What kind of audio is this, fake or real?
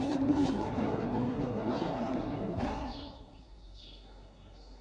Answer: fake